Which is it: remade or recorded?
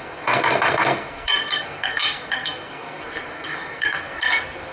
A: remade